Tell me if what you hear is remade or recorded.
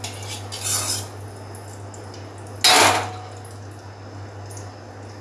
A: recorded